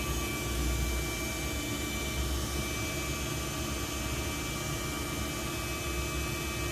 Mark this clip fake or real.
real